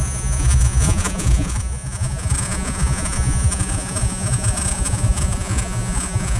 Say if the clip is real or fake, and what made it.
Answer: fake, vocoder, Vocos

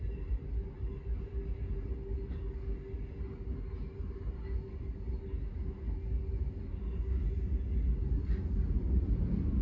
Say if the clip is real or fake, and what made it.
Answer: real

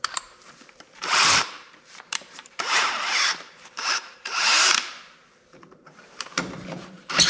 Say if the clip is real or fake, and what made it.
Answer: fake, vocoder, BigVGAN v2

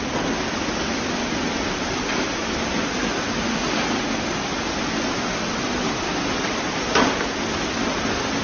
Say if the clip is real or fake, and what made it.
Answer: real